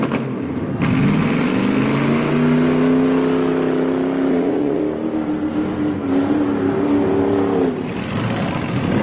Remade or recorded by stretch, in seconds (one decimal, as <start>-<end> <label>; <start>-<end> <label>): 0.0-4.3 recorded; 4.3-4.8 remade; 4.8-9.0 recorded